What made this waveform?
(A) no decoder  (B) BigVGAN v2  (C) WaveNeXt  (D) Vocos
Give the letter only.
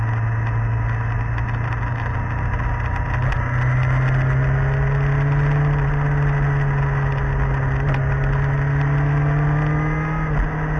A